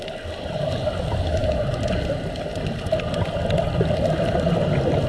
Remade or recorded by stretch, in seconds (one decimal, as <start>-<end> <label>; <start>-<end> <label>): 0.0-5.1 recorded